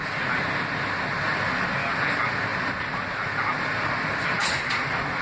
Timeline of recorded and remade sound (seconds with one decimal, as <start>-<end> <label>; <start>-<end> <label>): 0.0-5.2 recorded